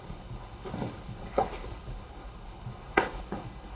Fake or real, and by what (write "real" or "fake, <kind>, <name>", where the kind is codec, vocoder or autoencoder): fake, codec, HILCodec